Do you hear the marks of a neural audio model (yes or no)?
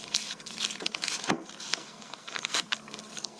yes